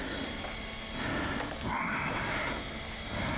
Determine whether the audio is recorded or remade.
recorded